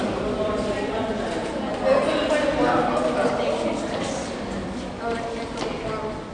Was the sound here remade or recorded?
recorded